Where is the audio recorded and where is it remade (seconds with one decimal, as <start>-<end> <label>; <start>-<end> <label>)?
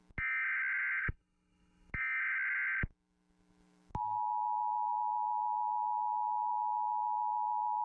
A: 0.0-1.0 recorded; 1.0-1.9 remade; 1.9-7.8 recorded